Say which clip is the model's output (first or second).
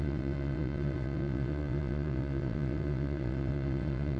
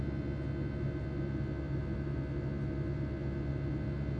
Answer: first